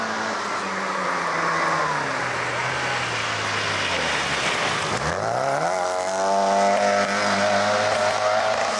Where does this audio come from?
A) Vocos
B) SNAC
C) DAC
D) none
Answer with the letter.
D